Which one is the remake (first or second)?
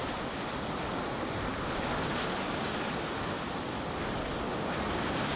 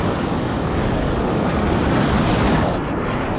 second